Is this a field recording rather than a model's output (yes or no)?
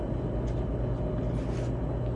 yes